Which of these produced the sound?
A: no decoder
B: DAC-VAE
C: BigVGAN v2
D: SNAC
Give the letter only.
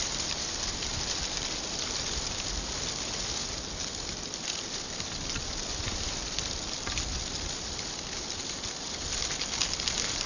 A